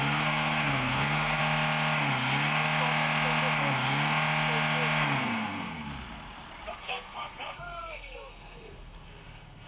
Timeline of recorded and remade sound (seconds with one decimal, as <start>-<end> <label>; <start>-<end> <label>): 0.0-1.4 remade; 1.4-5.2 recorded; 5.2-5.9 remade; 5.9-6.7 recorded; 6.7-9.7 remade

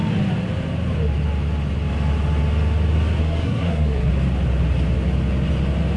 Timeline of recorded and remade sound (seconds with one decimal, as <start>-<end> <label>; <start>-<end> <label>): 0.0-3.2 recorded; 3.2-4.1 remade; 4.1-6.0 recorded

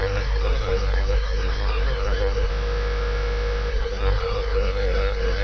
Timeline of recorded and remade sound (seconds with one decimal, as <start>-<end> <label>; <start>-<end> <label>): 0.0-2.5 remade; 2.5-3.7 recorded; 3.7-5.4 remade

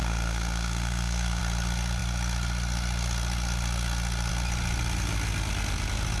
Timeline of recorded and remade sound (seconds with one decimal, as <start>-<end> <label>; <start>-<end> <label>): 0.0-1.4 remade; 1.4-6.2 recorded